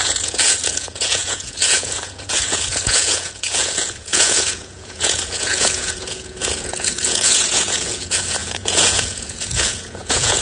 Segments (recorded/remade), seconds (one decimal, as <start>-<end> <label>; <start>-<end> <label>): 0.0-10.4 remade